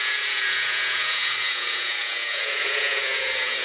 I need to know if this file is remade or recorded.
remade